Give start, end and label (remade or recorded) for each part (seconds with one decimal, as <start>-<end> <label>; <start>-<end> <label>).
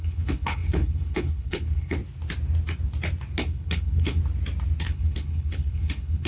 0.0-2.0 remade; 2.0-3.4 recorded; 3.4-4.2 remade; 4.2-4.8 recorded; 4.8-6.3 remade